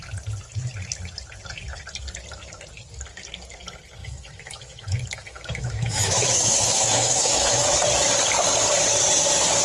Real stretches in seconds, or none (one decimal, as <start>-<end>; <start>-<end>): 0.0-4.0; 7.8-9.6